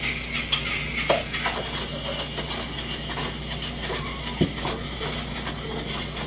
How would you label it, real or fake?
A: real